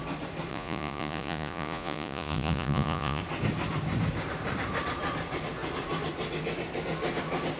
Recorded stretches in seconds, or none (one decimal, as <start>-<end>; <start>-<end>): 0.0-0.5; 3.2-7.6